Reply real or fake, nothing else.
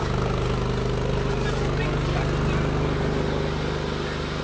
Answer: real